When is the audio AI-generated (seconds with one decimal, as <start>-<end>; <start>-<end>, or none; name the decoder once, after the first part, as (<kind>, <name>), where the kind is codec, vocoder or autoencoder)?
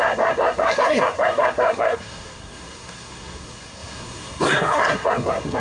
0.0-5.6 (codec, SNAC)